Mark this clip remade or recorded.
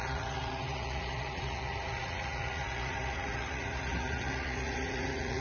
remade